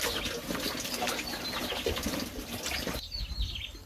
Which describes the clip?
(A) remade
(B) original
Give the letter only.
B